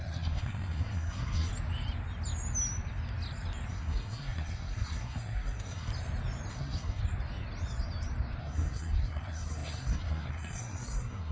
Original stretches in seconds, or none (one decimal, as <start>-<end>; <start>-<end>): 1.5-3.7; 5.9-6.5; 7.0-8.4

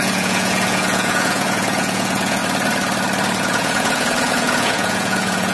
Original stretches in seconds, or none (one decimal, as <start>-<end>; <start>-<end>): 2.4-3.4

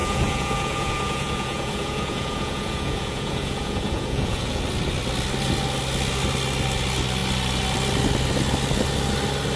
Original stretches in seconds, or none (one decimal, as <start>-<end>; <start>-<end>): 4.6-9.6

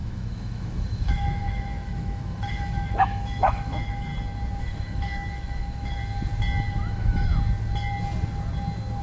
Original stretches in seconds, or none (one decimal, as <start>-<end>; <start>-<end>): 4.1-4.6; 6.0-6.7; 7.3-9.0

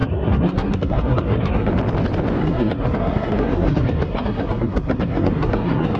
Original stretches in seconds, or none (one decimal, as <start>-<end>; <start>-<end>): 1.7-2.4

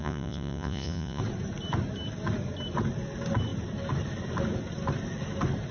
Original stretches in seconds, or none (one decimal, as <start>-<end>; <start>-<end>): 1.2-5.7